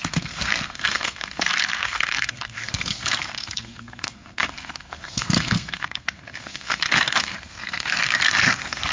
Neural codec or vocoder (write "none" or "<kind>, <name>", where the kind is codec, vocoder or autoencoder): codec, SNAC